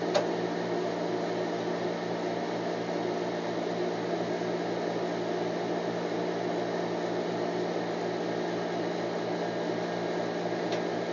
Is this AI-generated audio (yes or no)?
no